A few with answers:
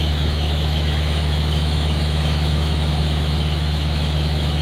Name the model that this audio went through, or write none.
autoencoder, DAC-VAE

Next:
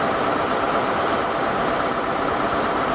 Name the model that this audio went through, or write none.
none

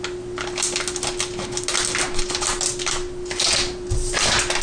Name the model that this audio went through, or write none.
none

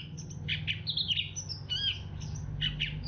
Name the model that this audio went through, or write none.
none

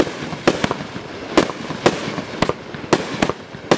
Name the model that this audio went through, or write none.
none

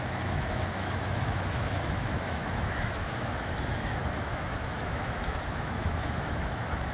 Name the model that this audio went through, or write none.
autoencoder, DAC-VAE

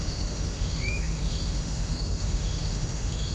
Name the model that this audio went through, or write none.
autoencoder, DAC-VAE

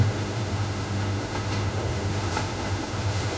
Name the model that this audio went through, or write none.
autoencoder, DAC-VAE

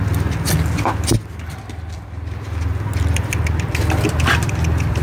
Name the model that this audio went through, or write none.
none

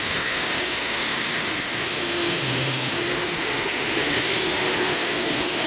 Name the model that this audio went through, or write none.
autoencoder, DAC-VAE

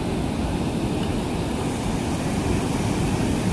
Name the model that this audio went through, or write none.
none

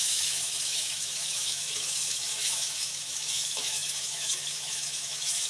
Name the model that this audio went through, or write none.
autoencoder, DAC-VAE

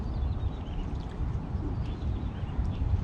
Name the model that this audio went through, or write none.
none